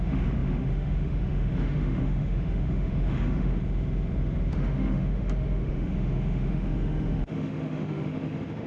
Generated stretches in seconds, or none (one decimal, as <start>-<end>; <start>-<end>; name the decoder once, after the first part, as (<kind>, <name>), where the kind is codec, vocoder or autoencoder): 0.0-3.5 (autoencoder, DAC-VAE); 4.5-8.7